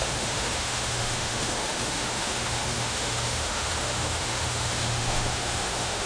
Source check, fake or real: fake